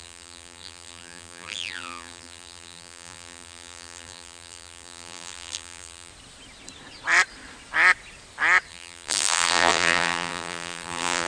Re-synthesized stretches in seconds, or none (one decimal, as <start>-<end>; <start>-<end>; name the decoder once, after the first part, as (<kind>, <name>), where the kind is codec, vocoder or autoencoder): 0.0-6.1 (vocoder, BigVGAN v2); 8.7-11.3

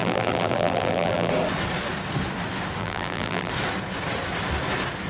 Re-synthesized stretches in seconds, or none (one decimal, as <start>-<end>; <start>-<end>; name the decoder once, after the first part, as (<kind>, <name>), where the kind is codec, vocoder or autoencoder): 0.0-1.3 (vocoder, BigVGAN v2); 2.8-3.5

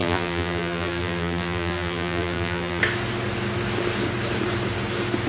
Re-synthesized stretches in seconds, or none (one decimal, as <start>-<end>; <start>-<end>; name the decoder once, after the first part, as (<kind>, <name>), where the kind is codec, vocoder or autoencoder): 0.0-2.8 (vocoder, BigVGAN v2)